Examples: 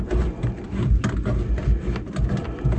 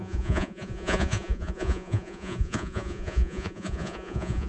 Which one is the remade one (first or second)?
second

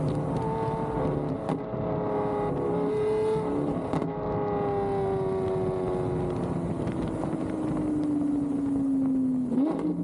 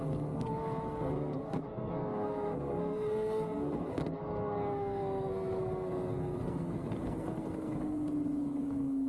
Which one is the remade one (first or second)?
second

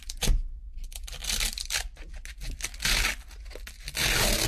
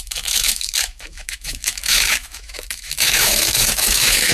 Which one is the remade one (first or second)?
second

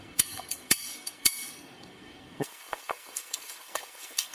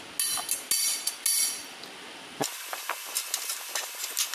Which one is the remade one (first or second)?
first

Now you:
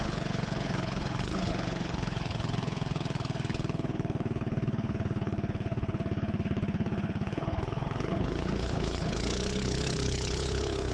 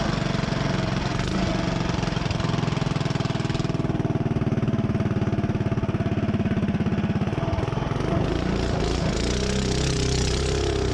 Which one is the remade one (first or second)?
first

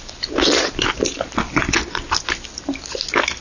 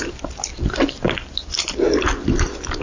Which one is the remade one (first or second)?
second